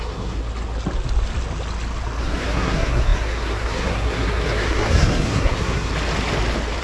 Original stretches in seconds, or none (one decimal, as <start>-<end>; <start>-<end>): 0.4-2.2; 5.9-6.8